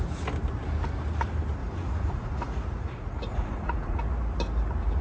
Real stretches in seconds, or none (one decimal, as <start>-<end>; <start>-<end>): 0.0-1.6; 4.0-5.0